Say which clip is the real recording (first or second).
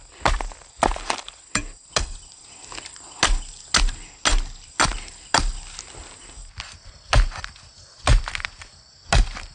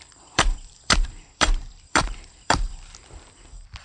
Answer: first